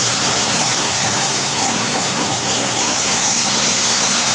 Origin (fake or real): fake